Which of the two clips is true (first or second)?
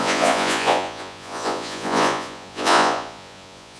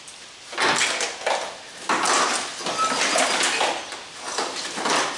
second